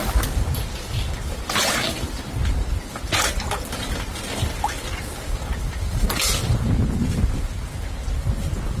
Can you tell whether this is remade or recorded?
recorded